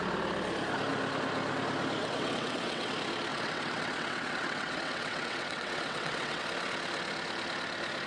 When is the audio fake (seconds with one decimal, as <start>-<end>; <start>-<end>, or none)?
2.0-2.9; 3.3-6.4